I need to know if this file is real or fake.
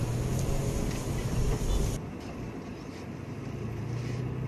real